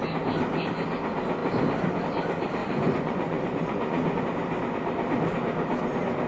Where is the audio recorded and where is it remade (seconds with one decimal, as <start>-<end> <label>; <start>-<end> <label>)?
0.0-2.6 recorded; 2.6-4.2 remade; 4.2-6.3 recorded